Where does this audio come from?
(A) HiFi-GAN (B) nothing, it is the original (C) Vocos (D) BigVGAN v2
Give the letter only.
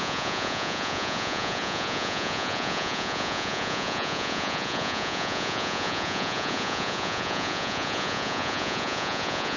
C